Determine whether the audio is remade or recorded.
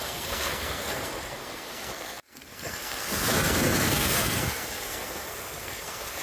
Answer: remade